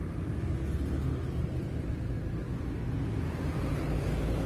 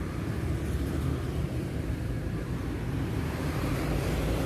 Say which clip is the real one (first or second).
first